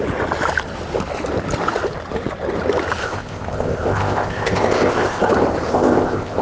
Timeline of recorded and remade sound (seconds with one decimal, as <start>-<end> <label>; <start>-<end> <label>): 0.0-3.0 recorded; 3.0-5.3 remade; 5.3-5.7 recorded; 5.7-6.4 remade